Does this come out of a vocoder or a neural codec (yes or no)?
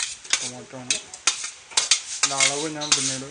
no